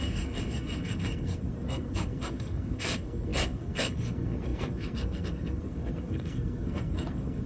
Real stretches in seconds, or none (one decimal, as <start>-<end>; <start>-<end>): none